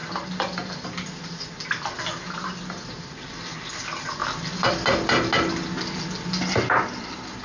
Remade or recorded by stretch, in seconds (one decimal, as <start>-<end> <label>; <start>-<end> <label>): 0.0-3.0 recorded; 3.0-4.2 remade; 4.2-6.7 recorded; 6.7-7.4 remade